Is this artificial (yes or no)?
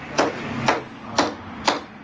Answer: no